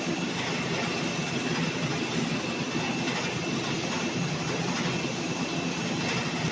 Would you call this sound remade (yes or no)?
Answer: no